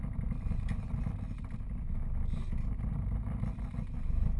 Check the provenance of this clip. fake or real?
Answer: real